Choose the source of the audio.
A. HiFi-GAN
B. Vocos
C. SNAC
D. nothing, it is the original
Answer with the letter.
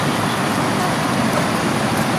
D